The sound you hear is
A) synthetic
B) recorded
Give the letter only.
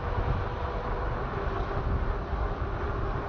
B